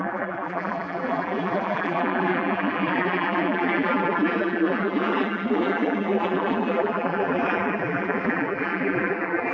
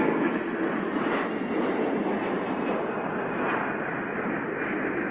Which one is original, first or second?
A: second